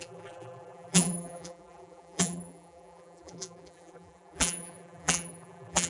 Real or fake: fake